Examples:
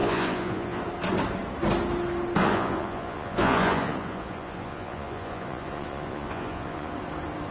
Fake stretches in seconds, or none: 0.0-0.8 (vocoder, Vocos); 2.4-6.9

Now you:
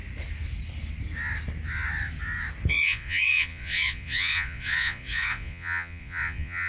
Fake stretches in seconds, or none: 2.7-6.7 (vocoder, Vocos)